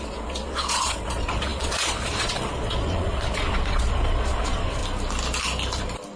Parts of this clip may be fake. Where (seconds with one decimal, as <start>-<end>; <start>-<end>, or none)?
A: 0.0-4.8

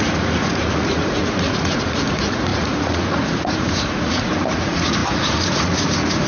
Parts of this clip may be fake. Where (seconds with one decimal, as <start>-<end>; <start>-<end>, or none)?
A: 0.0-6.3

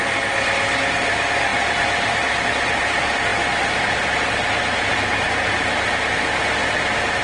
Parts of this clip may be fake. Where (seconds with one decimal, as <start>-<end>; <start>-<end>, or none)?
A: none

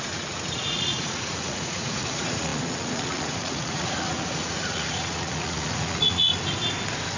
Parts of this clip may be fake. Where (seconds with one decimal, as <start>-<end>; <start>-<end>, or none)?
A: 0.0-6.3

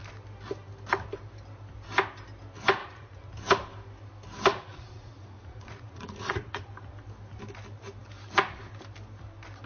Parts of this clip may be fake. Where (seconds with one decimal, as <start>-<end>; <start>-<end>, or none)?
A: 2.8-3.3; 4.5-6.7